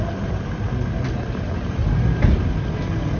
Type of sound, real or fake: real